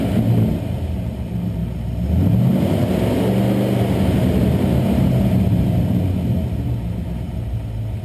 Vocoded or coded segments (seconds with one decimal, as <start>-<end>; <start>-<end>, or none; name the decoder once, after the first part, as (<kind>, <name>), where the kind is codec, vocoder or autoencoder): none